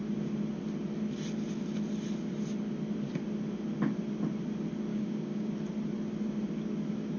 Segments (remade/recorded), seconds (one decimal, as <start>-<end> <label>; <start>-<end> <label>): 0.0-4.9 recorded; 4.9-5.5 remade; 5.5-7.2 recorded